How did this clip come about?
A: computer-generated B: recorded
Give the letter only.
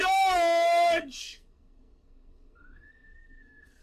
A